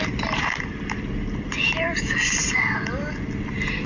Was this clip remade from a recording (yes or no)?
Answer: no